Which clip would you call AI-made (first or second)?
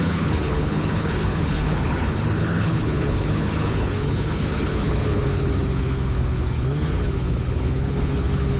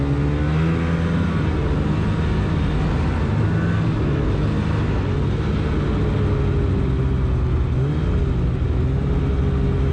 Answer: first